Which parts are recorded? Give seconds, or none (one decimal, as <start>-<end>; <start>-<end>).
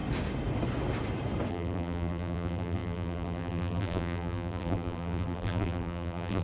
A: 0.0-1.5